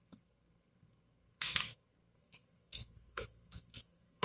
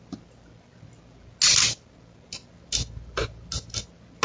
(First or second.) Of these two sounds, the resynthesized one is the first